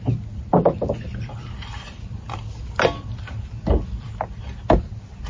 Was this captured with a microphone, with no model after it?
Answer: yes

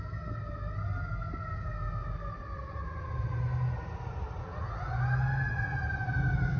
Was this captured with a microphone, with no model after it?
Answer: yes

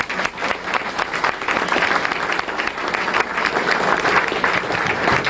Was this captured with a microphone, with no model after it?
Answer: yes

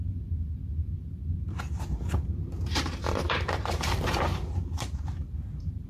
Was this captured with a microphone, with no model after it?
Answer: no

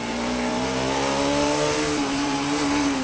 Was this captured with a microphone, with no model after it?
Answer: no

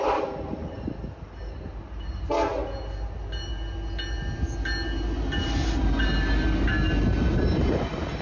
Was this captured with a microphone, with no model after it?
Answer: yes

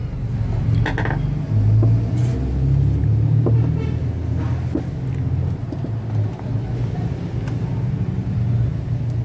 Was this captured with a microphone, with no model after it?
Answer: yes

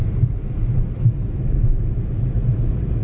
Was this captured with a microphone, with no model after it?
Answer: yes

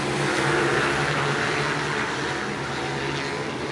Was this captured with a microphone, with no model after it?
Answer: yes